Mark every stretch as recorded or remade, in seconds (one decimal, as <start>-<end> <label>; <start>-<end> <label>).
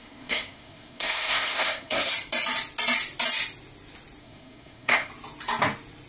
0.0-2.1 remade; 2.1-4.2 recorded; 4.2-5.1 remade; 5.1-6.1 recorded